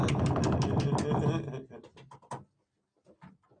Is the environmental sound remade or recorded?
recorded